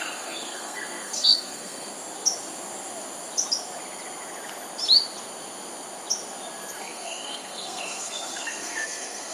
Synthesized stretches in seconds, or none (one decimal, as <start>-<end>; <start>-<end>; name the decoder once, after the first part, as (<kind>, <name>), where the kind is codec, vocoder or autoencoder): 0.0-1.9 (codec, SNAC); 6.8-9.3